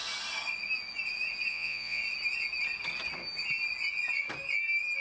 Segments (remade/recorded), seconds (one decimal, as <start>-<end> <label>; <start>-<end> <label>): 0.0-1.5 recorded; 1.5-2.0 remade; 2.0-5.0 recorded